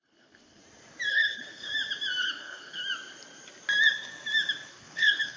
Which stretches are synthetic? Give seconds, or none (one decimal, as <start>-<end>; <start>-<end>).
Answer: 0.0-0.6; 1.1-1.7; 2.2-2.8; 4.7-5.4